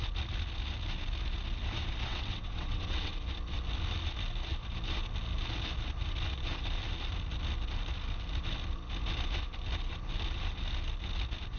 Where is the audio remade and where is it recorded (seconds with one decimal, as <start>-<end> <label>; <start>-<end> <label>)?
0.0-2.1 recorded; 2.1-3.1 remade; 3.1-11.6 recorded